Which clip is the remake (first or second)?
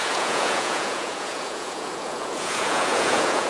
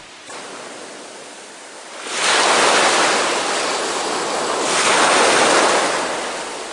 first